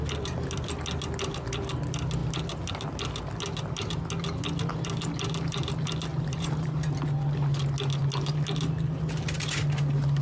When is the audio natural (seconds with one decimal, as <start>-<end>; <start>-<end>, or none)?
0.0-6.1; 6.9-10.2